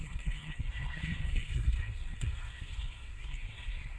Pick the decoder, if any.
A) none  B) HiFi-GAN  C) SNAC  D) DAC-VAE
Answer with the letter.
C